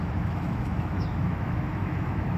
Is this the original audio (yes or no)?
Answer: no